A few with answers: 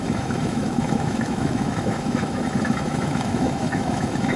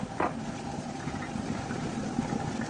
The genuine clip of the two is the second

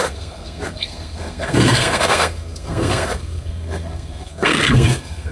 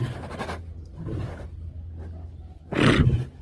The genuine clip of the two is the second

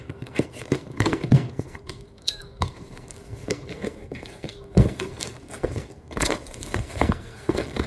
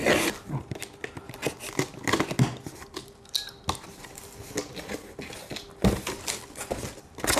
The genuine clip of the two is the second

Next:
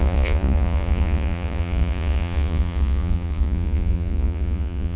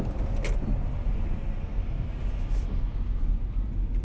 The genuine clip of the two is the second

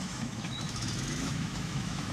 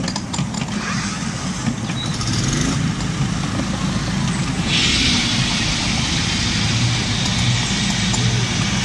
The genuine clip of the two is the second